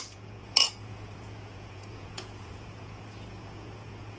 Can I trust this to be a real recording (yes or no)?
no